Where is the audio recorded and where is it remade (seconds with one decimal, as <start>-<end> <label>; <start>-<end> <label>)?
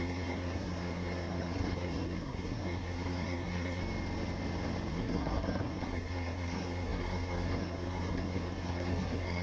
0.0-3.8 remade; 3.8-4.9 recorded; 4.9-9.4 remade